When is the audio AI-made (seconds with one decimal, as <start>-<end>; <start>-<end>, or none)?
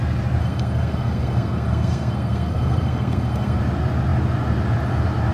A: 0.4-3.6